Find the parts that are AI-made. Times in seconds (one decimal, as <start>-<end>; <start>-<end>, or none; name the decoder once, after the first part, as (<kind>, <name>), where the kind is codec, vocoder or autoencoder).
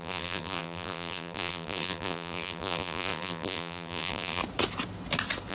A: 0.0-4.4 (vocoder, BigVGAN v2)